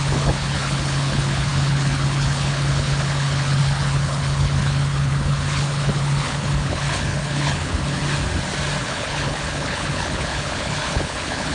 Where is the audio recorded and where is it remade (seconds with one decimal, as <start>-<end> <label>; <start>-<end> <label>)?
0.0-8.0 remade; 8.0-8.8 recorded; 8.8-11.5 remade